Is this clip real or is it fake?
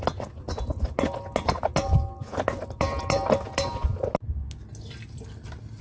real